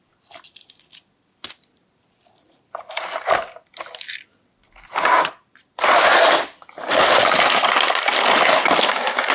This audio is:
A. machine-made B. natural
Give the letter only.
B